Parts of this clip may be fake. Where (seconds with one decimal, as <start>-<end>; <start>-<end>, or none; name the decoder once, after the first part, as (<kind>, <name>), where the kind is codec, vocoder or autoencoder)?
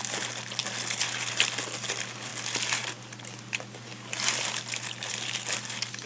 0.0-6.1 (vocoder, BigVGAN v2)